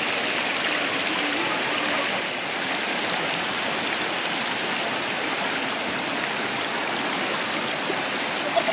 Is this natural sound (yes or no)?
yes